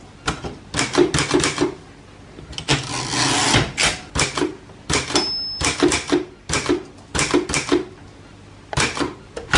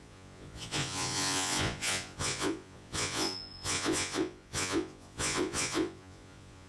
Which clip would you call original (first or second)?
first